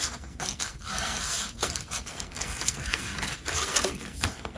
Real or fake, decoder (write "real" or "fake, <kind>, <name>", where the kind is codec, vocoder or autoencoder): fake, codec, SNAC